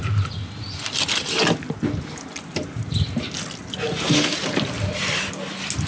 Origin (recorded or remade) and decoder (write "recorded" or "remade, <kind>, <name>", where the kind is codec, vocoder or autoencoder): recorded